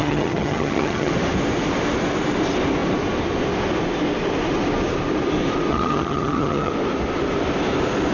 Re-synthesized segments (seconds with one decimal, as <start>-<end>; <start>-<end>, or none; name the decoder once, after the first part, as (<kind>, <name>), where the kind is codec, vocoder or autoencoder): 0.0-1.1 (vocoder, HiFi-GAN); 5.7-6.7

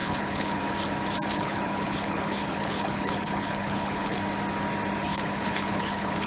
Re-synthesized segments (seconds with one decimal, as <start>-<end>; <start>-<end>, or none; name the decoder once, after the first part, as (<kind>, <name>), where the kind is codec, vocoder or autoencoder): 0.0-0.6 (codec, HILCodec); 1.3-4.2; 5.1-6.3

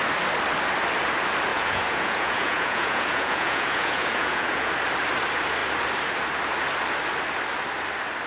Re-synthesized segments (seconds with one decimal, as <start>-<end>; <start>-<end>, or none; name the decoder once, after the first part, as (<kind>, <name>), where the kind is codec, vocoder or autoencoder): 1.5-4.7 (vocoder, Vocos)

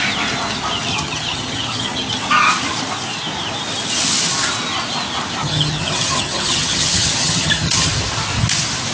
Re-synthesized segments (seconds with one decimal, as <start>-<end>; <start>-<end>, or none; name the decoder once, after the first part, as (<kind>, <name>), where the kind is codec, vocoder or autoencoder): 0.9-2.2 (vocoder, HiFi-GAN); 5.4-7.9